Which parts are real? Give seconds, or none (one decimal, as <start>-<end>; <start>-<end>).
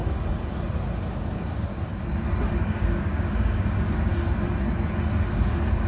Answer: 0.0-1.0; 1.7-2.6; 4.1-5.3